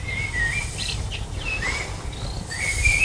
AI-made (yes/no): no